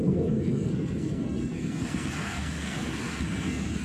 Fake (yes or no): yes